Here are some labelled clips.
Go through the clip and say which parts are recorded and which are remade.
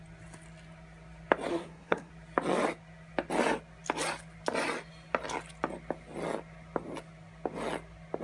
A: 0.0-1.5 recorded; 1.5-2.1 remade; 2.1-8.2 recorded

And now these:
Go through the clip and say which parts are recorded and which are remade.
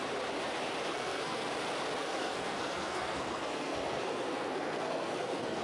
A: 0.0-0.9 recorded; 0.9-1.5 remade; 1.5-2.0 recorded; 2.0-5.6 remade